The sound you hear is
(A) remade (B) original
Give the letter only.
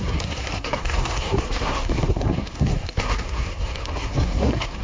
A